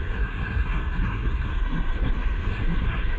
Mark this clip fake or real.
fake